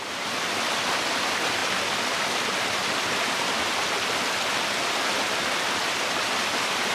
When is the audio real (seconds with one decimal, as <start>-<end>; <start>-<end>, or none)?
0.0-6.9